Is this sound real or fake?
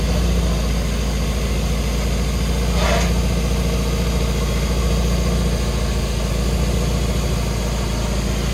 real